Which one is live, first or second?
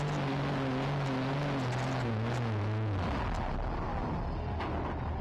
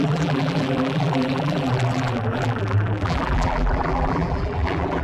first